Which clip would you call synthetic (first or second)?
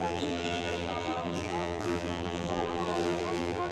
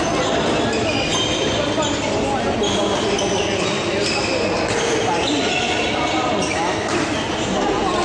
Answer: first